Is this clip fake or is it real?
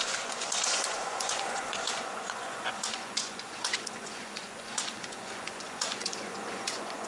fake